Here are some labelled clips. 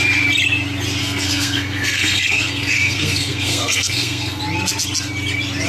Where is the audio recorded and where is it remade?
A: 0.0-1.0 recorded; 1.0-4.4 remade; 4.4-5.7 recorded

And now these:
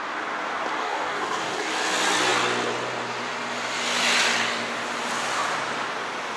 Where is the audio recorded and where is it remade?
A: 0.0-0.8 recorded; 0.8-1.7 remade; 1.7-6.4 recorded

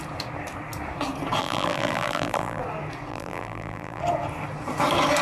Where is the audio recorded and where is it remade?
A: 0.0-1.4 recorded; 1.4-2.6 remade; 2.6-3.1 recorded; 3.1-4.0 remade; 4.0-5.2 recorded

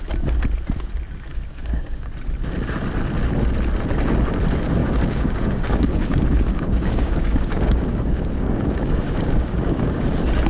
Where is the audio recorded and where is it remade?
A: 0.0-1.3 recorded; 1.3-2.1 remade; 2.1-4.8 recorded; 4.8-10.0 remade; 10.0-10.5 recorded

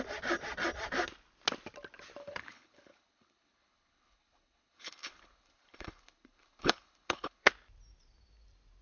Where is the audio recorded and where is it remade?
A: 0.0-2.2 recorded; 2.2-7.5 remade; 7.5-8.8 recorded

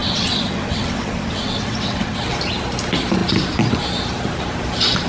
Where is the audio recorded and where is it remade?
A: 0.0-2.2 remade; 2.2-5.1 recorded

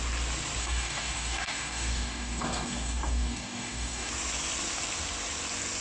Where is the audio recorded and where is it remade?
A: 0.0-0.6 recorded; 0.6-4.1 remade; 4.1-5.8 recorded